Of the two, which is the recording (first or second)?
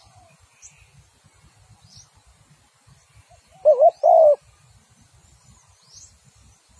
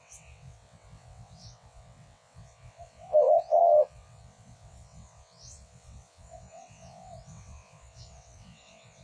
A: first